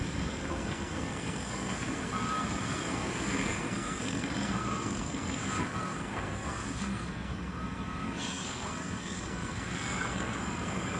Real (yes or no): no